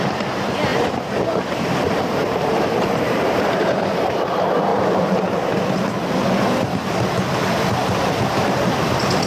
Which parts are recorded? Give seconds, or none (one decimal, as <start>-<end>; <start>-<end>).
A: 0.0-0.7; 4.2-4.7; 5.2-9.3